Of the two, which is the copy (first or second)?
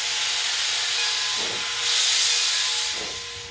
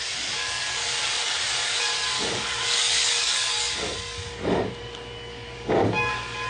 second